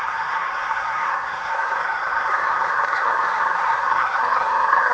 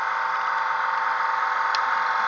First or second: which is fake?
first